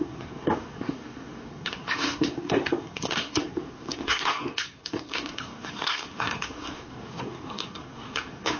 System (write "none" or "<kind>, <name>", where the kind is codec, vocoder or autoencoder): codec, SNAC